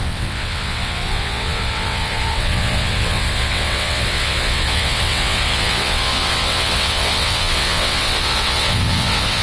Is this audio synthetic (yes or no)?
yes